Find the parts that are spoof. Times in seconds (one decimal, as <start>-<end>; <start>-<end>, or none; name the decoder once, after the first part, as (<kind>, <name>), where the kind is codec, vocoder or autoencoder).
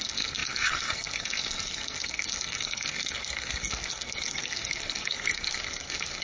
0.0-6.2 (codec, SNAC)